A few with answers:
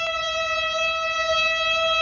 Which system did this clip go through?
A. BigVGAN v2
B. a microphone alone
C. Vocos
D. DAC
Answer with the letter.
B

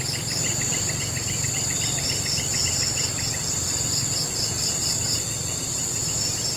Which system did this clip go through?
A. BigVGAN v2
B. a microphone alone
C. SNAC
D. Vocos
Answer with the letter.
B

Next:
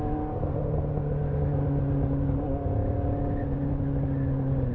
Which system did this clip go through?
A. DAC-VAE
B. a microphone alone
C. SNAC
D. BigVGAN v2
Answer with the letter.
B